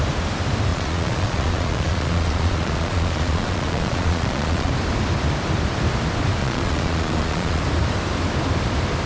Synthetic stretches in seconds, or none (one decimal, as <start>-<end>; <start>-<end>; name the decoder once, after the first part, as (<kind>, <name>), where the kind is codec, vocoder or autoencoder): 0.7-4.7 (vocoder, Vocos); 6.4-7.6